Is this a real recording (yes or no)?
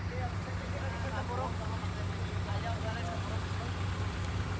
yes